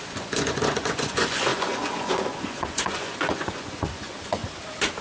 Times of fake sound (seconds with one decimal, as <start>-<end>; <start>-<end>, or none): 0.0-4.4